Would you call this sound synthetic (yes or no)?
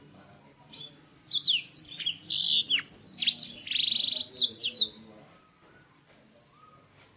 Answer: no